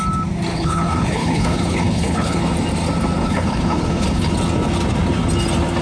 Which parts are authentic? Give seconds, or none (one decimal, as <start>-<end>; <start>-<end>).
0.0-0.5; 2.4-3.2; 4.3-5.8